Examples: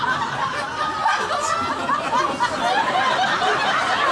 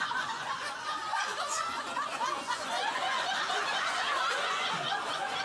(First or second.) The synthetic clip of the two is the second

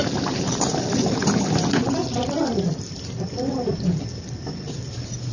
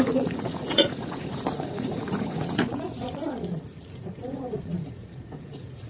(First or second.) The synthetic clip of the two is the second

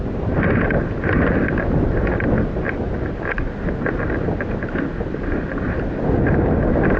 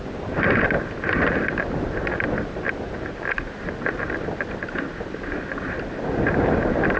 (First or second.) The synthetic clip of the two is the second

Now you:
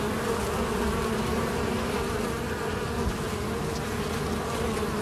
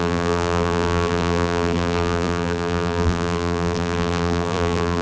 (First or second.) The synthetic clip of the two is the second